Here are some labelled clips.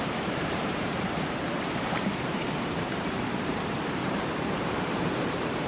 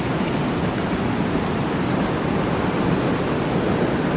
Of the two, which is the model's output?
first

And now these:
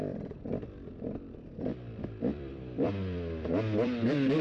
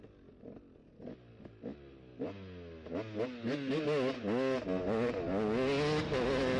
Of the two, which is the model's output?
first